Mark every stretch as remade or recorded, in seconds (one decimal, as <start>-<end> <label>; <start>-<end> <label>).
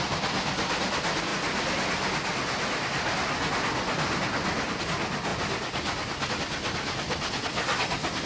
0.0-8.3 recorded